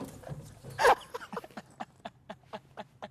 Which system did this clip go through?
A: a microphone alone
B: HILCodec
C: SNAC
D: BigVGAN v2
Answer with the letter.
A